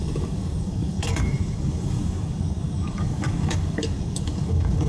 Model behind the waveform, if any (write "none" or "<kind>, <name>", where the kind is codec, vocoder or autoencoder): codec, DAC